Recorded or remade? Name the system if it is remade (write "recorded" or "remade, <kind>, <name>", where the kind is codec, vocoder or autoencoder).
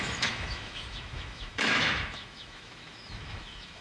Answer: remade, autoencoder, DAC-VAE